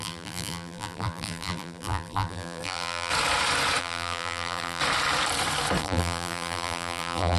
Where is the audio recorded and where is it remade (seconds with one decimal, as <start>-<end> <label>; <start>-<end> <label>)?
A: 0.0-3.1 remade; 3.1-3.8 recorded; 3.8-4.8 remade; 4.8-5.8 recorded; 5.8-7.4 remade